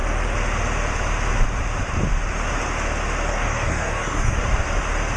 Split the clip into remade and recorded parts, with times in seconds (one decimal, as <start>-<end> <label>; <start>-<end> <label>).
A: 0.0-3.3 recorded; 3.3-4.4 remade; 4.4-5.2 recorded